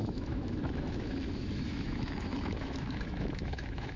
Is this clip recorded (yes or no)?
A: no